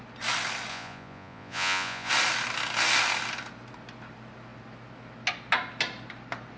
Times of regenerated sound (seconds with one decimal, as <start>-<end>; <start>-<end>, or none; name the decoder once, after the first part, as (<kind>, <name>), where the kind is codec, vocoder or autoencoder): 0.7-2.1 (vocoder, Vocos)